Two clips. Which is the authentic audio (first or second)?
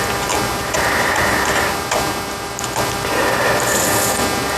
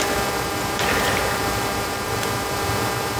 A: first